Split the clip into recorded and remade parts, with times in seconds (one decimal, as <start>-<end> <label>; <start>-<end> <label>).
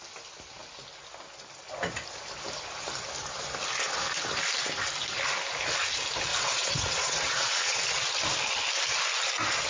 0.0-6.3 recorded; 6.3-7.8 remade; 7.8-9.7 recorded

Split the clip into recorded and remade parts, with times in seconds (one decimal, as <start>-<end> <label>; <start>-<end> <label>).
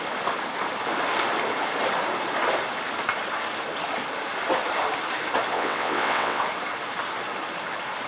0.0-5.5 recorded; 5.5-6.4 remade; 6.4-8.1 recorded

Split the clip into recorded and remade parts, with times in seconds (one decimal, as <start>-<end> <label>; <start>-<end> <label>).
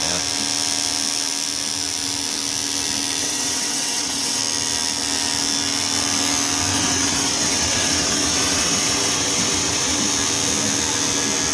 0.0-3.2 recorded; 3.2-4.4 remade; 4.4-6.7 recorded; 6.7-10.1 remade; 10.1-11.5 recorded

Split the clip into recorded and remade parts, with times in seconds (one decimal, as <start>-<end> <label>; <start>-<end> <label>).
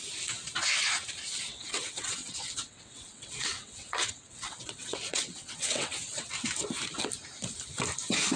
0.0-1.5 recorded; 1.5-6.3 remade; 6.3-8.4 recorded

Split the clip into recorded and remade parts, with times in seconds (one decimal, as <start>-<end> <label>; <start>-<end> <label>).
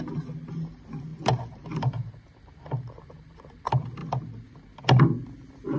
0.0-5.8 recorded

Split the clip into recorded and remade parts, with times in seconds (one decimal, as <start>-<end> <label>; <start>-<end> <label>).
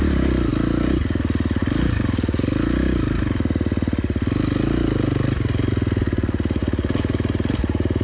0.0-8.0 recorded